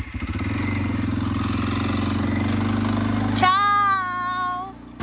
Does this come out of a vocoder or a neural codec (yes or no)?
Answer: no